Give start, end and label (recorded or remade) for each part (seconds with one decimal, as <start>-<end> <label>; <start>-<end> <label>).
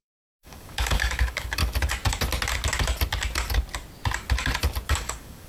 0.0-1.6 remade; 1.6-4.9 recorded; 4.9-5.5 remade